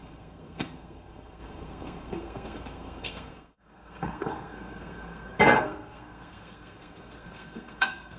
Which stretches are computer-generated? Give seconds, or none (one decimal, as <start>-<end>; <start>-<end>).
0.0-8.2